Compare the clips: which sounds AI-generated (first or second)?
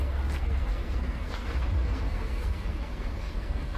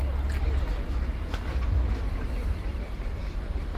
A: first